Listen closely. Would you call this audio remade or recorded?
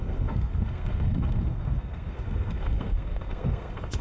remade